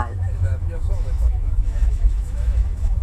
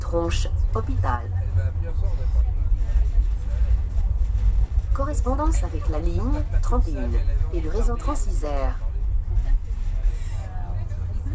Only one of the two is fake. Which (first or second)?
first